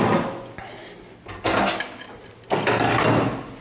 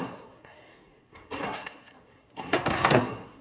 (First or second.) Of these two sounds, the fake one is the second